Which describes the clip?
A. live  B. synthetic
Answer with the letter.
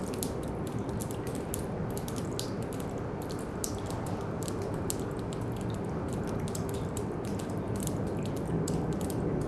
A